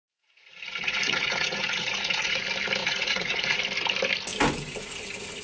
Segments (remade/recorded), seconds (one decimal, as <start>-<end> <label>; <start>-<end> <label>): 0.0-2.4 remade; 2.4-2.8 recorded; 2.8-3.6 remade; 3.6-5.4 recorded